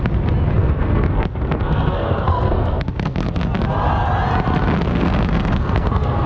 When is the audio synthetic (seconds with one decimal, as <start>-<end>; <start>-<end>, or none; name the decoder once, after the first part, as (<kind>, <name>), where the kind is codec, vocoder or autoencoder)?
0.6-3.4 (codec, SNAC); 4.9-6.3